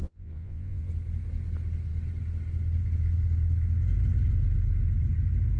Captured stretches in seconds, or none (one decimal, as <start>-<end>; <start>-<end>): 0.9-5.6